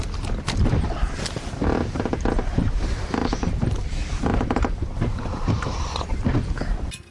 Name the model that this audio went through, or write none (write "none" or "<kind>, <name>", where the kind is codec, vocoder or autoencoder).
vocoder, BigVGAN v2